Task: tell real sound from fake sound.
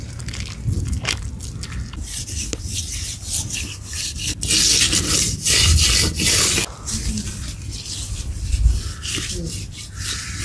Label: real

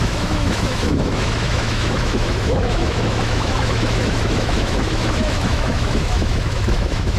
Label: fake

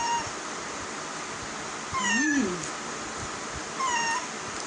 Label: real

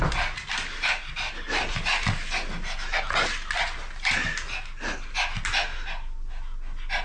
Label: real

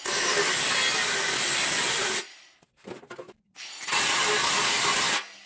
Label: real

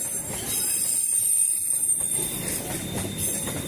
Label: real